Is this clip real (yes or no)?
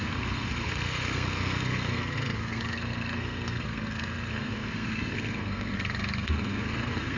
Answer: no